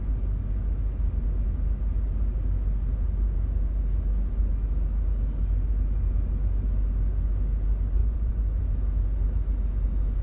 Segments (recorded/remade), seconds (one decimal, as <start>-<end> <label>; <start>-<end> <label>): 0.0-8.0 recorded; 8.0-8.6 remade; 8.6-10.2 recorded